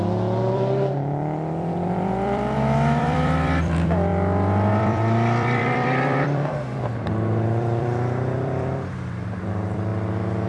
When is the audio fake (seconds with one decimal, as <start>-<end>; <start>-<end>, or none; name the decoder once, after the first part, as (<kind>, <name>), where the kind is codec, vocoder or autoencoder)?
0.0-4.1 (vocoder, BigVGAN v2); 4.7-9.9